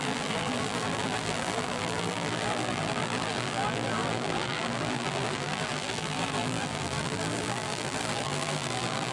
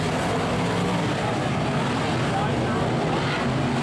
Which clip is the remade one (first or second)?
first